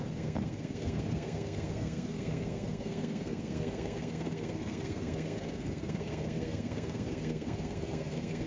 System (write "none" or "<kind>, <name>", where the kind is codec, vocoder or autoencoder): codec, SNAC